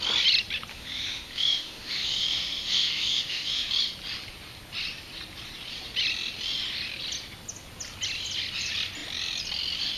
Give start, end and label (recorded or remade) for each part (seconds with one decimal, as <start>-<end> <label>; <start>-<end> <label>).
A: 0.0-0.7 recorded; 0.7-3.7 remade; 3.7-10.0 recorded